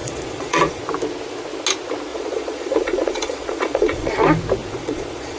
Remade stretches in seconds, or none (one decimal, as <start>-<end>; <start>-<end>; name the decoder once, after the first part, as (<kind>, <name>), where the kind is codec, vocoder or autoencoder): 0.0-0.8 (vocoder, Vocos); 2.1-4.1; 4.6-5.4